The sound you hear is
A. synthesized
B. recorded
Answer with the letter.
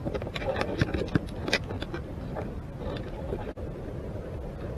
B